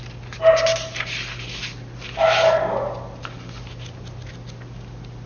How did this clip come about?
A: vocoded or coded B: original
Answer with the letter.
B